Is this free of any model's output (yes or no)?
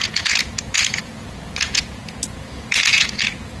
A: no